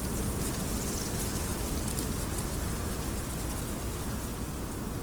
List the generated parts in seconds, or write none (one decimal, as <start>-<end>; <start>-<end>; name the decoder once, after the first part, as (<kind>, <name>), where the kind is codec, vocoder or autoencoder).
1.5-2.4 (vocoder, BigVGAN v2)